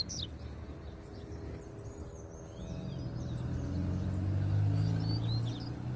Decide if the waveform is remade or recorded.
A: recorded